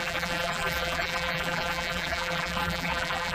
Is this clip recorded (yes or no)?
no